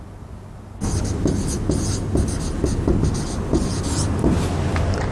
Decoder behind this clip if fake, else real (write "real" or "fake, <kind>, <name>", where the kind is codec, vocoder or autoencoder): real